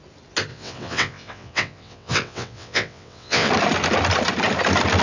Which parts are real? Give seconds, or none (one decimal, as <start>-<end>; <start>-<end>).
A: 0.0-0.5; 3.5-5.0